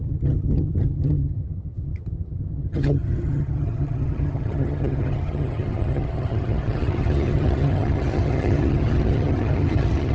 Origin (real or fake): fake